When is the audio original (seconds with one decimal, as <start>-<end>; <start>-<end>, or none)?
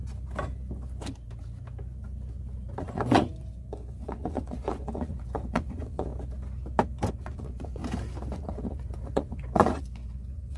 0.0-2.8; 6.1-7.1; 7.8-8.3